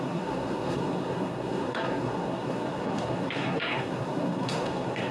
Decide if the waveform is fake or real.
fake